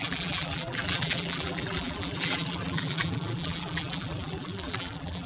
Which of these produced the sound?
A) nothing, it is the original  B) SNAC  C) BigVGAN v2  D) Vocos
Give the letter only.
C